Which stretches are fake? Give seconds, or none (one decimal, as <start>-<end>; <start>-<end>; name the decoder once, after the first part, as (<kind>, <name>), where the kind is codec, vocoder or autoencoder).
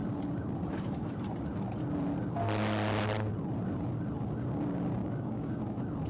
5.0-5.6 (codec, DAC)